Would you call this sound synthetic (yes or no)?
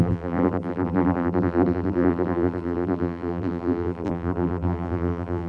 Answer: yes